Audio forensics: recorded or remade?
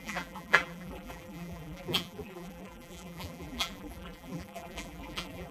remade